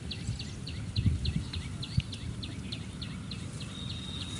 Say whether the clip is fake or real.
real